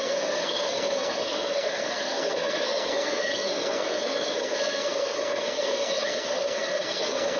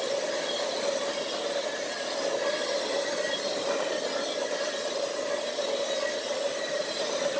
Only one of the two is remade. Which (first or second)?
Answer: first